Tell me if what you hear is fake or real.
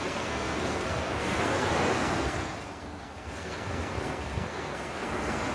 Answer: fake